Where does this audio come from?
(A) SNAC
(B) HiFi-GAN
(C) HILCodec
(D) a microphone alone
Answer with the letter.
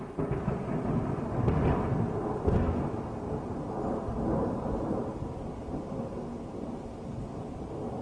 D